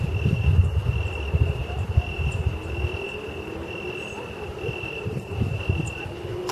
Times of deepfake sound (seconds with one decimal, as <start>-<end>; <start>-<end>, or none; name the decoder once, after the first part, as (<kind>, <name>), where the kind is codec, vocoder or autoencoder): none